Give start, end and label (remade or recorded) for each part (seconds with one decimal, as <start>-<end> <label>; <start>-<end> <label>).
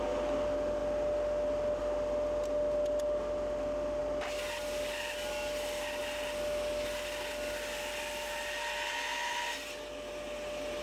0.0-10.8 recorded